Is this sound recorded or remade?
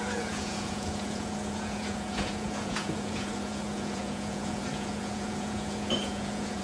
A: remade